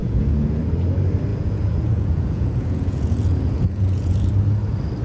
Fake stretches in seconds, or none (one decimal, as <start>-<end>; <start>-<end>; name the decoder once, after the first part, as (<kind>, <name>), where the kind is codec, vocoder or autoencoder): 0.0-0.6 (vocoder, Vocos); 1.3-4.3